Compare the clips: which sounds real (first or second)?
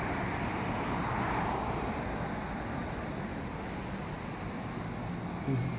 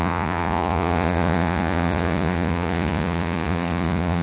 first